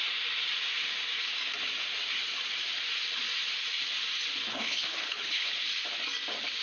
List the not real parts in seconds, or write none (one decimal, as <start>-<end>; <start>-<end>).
4.5-5.5